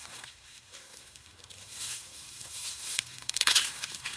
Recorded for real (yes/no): no